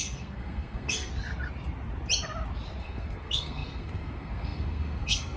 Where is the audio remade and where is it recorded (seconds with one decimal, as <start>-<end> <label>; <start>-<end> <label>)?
0.0-1.1 remade; 1.1-2.8 recorded; 2.8-5.4 remade